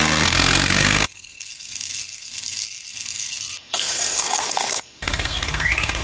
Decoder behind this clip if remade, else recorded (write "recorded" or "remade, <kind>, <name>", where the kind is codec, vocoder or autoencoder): remade, codec, SNAC